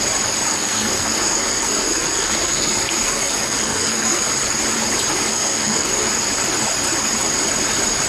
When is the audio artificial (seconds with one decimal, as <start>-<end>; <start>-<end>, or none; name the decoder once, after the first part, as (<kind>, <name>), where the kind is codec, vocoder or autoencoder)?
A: 0.5-4.3 (codec, SNAC); 5.3-6.1